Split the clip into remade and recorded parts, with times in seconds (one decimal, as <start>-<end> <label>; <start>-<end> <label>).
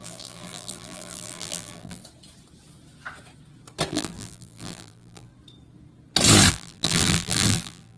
0.0-2.0 remade; 2.0-3.9 recorded; 3.9-5.3 remade; 5.3-6.5 recorded; 6.5-8.0 remade